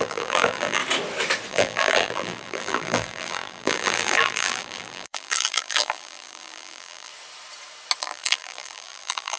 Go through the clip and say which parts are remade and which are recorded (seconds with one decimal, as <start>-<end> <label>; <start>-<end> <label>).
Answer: 0.0-0.8 remade; 0.8-1.5 recorded; 1.5-7.1 remade; 7.1-8.0 recorded; 8.0-9.4 remade